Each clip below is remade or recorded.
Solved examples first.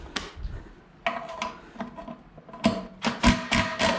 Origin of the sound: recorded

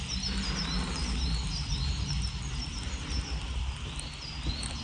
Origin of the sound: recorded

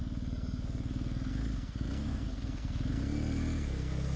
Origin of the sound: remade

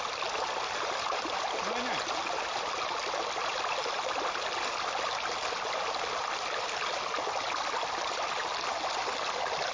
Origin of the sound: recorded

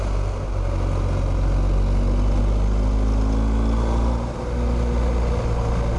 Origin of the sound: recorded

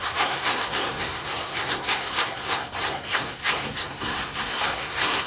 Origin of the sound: remade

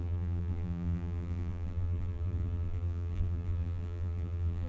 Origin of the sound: remade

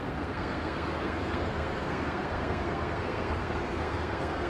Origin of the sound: remade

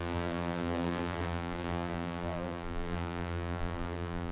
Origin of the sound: remade